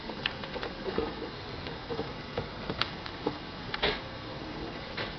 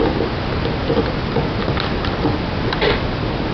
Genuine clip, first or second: second